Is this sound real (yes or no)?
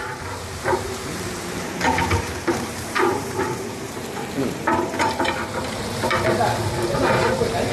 no